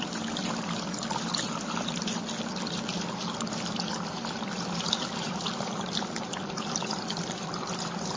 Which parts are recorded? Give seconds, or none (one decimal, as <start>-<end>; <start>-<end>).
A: 0.0-5.7; 7.5-8.2